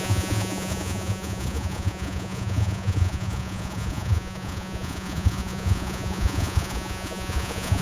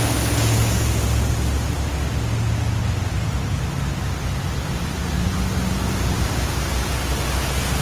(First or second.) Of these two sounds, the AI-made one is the first